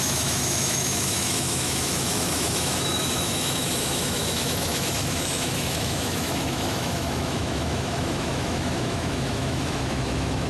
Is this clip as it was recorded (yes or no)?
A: no